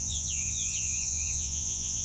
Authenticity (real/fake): fake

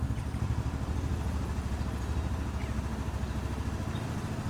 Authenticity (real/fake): real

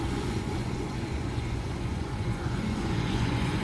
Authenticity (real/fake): fake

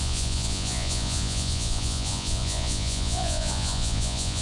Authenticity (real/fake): fake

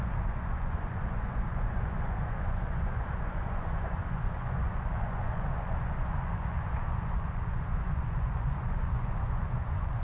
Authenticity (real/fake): fake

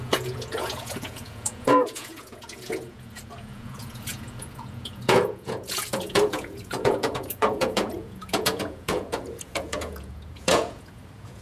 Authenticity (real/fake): fake